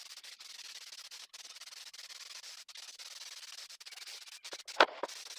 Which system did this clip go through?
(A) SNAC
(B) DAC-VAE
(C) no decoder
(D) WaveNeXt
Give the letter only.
C